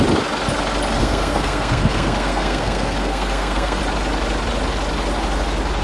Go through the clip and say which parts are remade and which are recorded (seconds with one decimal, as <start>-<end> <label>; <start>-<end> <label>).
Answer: 0.0-1.0 recorded; 1.0-3.8 remade; 3.8-5.8 recorded